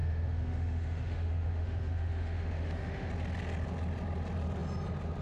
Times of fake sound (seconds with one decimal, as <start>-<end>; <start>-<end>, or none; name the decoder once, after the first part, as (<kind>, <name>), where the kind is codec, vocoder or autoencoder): 0.0-3.1 (autoencoder, DAC-VAE)